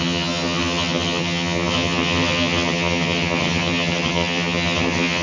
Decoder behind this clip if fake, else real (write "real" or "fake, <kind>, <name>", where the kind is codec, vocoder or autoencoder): fake, vocoder, HiFi-GAN